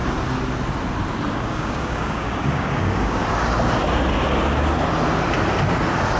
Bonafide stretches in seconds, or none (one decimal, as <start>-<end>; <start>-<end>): 0.0-1.3; 3.2-6.2